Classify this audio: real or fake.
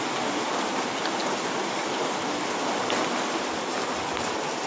real